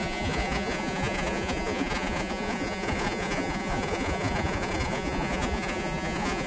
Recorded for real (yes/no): no